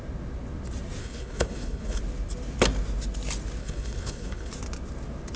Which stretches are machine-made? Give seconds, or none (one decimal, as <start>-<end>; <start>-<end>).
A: 1.0-2.0; 3.6-4.5